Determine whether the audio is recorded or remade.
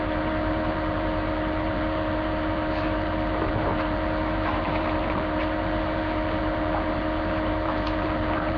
remade